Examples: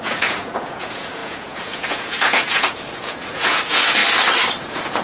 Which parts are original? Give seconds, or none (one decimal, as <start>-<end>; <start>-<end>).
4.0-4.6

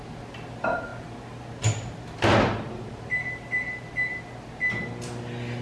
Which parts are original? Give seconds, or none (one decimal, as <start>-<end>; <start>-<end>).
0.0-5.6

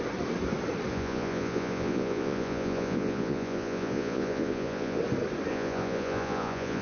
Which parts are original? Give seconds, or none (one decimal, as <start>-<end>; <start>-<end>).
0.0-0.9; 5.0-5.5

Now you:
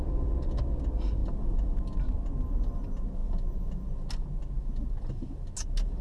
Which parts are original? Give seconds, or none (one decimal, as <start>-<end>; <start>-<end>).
0.0-6.0

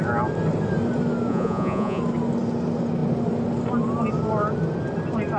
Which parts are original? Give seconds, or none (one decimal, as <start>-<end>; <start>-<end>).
0.0-1.3; 2.0-5.4